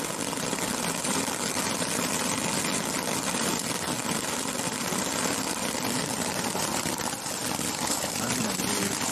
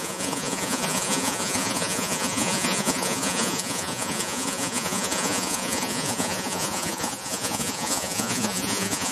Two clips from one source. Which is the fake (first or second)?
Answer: second